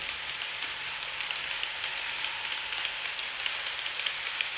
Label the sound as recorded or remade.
recorded